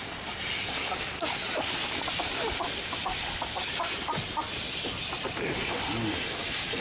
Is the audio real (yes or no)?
yes